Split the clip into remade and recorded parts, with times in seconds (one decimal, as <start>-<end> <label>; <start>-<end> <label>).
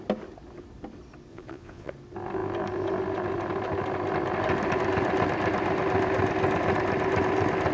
0.0-1.3 recorded; 1.3-1.9 remade; 1.9-7.7 recorded